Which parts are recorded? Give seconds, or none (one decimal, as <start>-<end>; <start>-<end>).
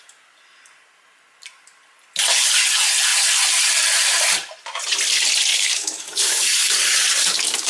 0.0-5.5